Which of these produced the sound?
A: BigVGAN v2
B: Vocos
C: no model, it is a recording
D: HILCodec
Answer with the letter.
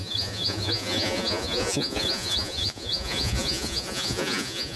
B